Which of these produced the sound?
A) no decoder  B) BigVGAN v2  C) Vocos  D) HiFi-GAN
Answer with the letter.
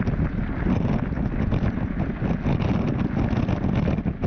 A